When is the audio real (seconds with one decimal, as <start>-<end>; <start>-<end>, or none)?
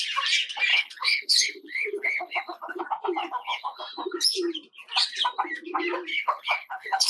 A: 0.0-0.7; 2.8-3.2; 3.8-6.1